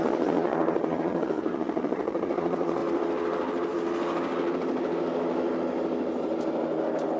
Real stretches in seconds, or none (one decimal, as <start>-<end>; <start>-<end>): 2.8-7.2